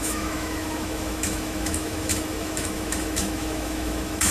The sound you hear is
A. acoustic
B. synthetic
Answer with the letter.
B